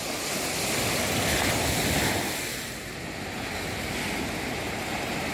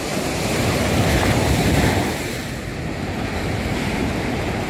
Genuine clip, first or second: first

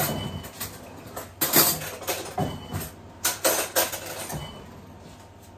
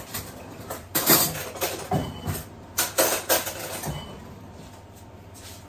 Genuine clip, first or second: first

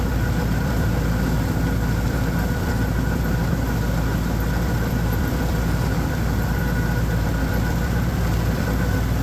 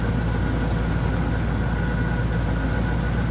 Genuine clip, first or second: second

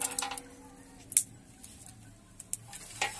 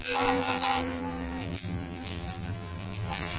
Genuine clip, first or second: first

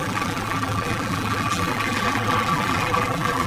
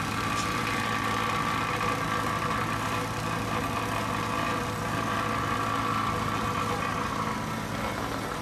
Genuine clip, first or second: second